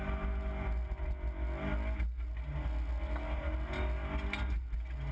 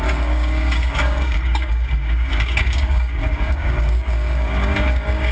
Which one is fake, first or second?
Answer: second